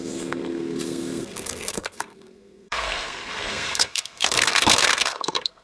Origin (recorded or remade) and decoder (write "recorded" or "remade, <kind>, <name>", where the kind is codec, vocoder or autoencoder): remade, codec, SNAC